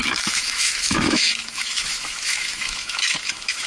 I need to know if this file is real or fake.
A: fake